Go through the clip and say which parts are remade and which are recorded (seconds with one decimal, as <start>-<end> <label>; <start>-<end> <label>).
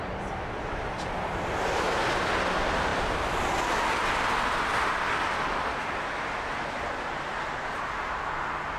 0.0-2.2 remade; 2.2-2.9 recorded; 2.9-3.4 remade; 3.4-8.8 recorded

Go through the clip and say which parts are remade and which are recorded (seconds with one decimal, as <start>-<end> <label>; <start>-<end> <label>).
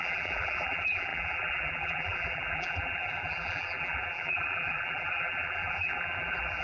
0.0-6.6 remade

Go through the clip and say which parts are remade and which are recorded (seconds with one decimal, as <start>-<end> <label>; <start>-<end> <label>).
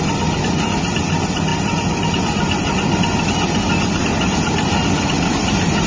0.0-5.9 recorded